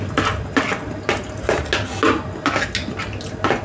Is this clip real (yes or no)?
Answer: yes